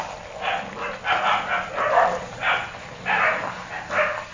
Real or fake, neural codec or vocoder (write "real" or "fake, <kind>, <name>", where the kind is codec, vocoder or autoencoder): real